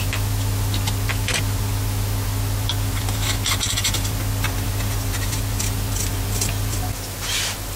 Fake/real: real